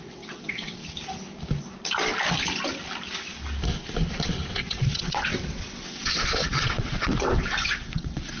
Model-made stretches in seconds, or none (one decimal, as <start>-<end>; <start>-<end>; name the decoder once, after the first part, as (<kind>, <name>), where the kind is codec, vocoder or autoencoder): 0.0-0.8 (vocoder, WaveNeXt); 4.5-8.4